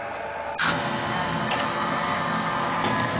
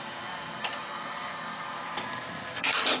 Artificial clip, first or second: second